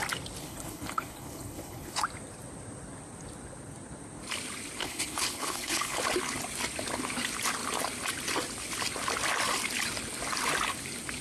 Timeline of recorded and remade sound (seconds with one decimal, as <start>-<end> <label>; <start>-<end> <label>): 0.0-0.4 recorded; 0.4-2.0 remade; 2.0-4.8 recorded; 4.8-6.0 remade; 6.0-11.2 recorded